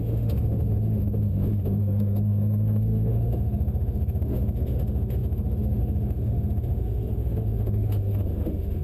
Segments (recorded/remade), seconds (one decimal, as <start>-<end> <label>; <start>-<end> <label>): 0.0-8.8 remade